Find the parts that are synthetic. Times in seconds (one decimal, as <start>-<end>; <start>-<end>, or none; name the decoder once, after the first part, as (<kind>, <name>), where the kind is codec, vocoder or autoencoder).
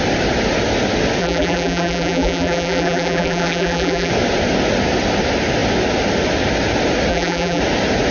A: 1.2-4.1 (vocoder, BigVGAN v2); 7.1-7.6